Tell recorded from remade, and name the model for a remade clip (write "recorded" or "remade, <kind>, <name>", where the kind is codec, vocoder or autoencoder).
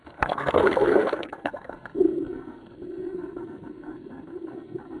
remade, codec, SNAC